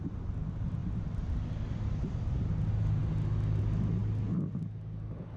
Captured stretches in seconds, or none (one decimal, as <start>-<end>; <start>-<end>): 0.0-5.4